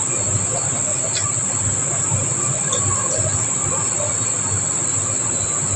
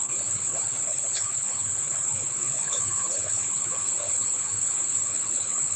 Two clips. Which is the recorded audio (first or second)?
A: first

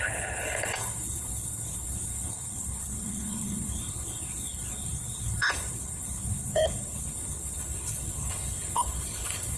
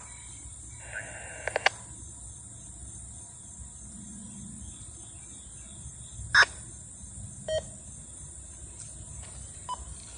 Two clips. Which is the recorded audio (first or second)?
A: second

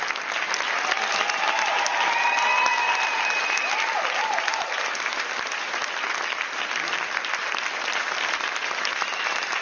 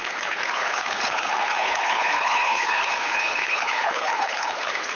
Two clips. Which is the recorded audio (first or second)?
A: first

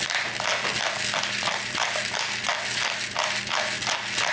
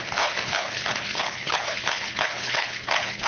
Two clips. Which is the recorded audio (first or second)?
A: first